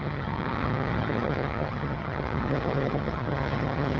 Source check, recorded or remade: remade